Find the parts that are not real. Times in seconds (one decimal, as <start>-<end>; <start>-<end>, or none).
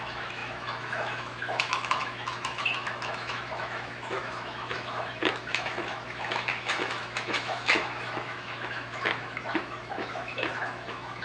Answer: 0.0-11.2